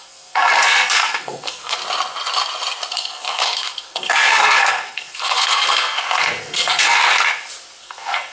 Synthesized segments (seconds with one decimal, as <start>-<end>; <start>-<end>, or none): 0.0-1.8; 2.9-7.0; 7.8-8.3